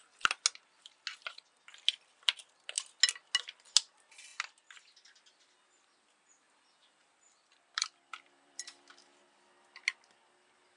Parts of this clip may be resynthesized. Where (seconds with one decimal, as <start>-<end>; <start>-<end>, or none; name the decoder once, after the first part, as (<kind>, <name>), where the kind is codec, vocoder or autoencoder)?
6.8-8.9 (vocoder, BigVGAN v2)